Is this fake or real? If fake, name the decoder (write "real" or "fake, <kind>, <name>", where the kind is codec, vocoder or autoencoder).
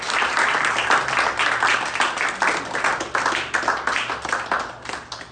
real